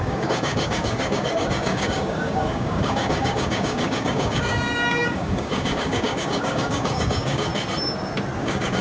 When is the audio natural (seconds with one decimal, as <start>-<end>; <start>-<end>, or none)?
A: 7.5-8.4